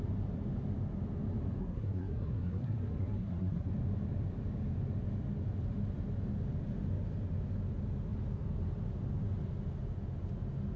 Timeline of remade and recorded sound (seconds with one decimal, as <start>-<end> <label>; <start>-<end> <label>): 0.0-1.6 recorded; 1.6-3.7 remade; 3.7-10.8 recorded